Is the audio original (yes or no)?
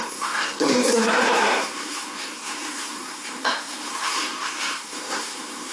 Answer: no